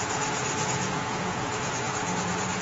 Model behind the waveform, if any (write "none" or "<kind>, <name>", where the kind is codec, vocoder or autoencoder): vocoder, Vocos